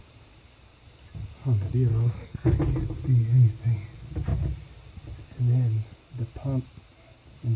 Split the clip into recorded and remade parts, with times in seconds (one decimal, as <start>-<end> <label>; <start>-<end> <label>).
0.0-1.9 recorded; 1.9-2.5 remade; 2.5-7.6 recorded